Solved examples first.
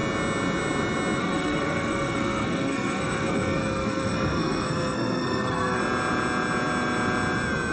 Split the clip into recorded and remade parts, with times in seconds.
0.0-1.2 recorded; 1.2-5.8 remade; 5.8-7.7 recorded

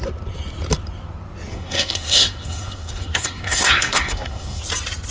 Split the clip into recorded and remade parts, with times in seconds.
0.0-1.5 recorded; 1.5-4.6 remade; 4.6-5.1 recorded

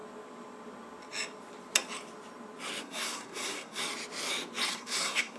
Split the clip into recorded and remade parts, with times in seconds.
0.0-2.8 recorded; 2.8-3.8 remade; 3.8-4.7 recorded; 4.7-5.4 remade

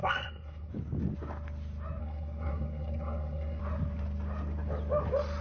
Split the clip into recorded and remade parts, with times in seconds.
0.0-0.7 remade; 0.7-2.0 recorded; 2.0-3.6 remade; 3.6-5.4 recorded

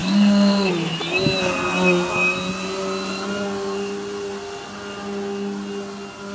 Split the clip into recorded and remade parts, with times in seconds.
0.0-0.7 remade; 0.7-6.3 recorded